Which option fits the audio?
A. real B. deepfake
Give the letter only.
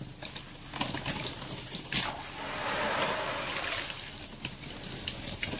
A